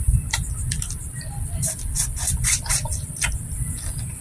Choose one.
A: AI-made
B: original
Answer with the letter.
A